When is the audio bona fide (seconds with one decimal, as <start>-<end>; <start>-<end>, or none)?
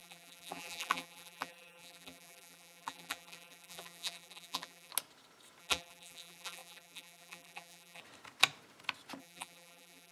4.9-5.6; 8.0-9.2